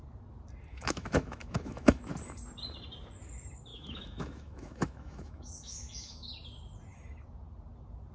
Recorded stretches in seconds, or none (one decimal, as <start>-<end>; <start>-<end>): 0.0-0.7; 2.1-3.7; 6.3-8.1